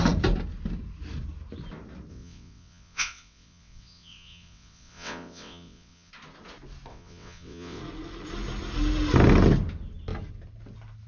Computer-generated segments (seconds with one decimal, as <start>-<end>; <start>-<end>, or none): 2.1-6.1; 6.9-7.8